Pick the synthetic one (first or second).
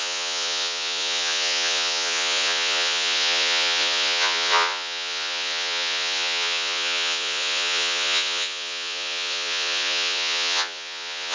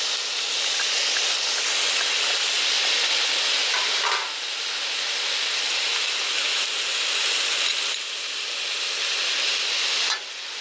first